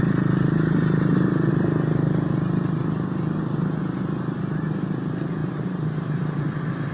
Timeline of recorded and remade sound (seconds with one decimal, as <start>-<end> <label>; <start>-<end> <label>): 0.0-6.9 recorded